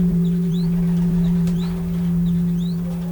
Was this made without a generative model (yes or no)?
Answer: no